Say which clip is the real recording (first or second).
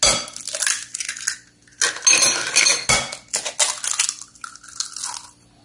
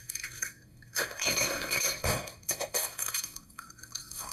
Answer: first